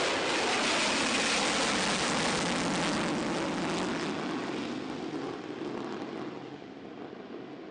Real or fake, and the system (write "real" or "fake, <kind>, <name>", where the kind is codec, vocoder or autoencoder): real